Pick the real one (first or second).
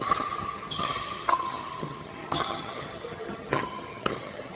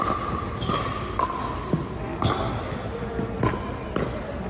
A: second